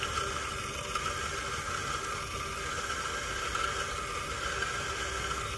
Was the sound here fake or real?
real